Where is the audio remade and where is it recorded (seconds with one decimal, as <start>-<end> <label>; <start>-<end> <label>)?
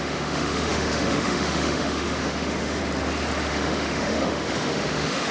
0.0-2.8 remade; 2.8-3.5 recorded; 3.5-5.3 remade